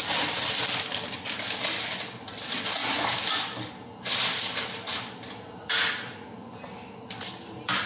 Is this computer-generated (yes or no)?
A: no